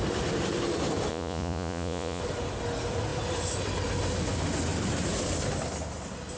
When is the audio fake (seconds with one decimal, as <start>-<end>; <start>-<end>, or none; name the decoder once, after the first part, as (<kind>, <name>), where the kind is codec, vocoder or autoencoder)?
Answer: 1.1-2.2 (vocoder, Vocos)